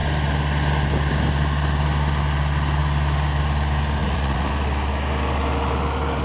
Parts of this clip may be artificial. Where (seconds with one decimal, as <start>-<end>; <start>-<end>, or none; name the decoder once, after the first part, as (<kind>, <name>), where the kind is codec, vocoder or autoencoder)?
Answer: 4.0-4.5 (vocoder, Vocos)